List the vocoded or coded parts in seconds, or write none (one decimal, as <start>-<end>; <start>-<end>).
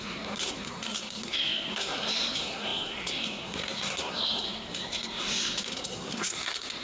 0.0-6.8